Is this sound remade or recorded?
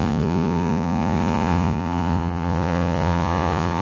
remade